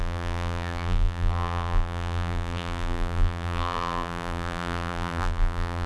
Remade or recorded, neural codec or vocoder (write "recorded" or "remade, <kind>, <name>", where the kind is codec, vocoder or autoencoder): remade, vocoder, BigVGAN v2